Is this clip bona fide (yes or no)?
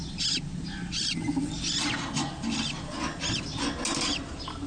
yes